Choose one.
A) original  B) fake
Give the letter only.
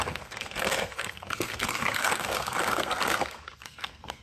B